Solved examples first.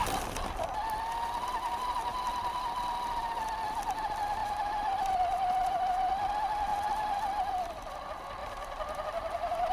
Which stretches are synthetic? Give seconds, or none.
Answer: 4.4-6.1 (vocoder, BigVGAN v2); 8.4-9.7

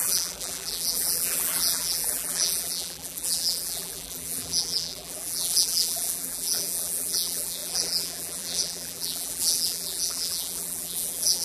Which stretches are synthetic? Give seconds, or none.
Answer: 0.0-11.4 (vocoder, BigVGAN v2)

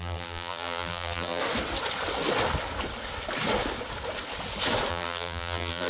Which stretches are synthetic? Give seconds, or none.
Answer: 0.0-1.4 (vocoder, BigVGAN v2); 4.9-5.9

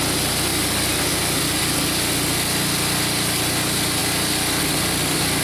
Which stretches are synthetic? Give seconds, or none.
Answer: none

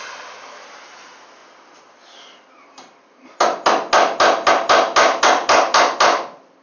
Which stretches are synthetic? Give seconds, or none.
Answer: none

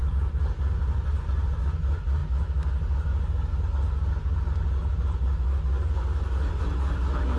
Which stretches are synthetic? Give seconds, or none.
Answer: 0.0-1.6 (vocoder, BigVGAN v2)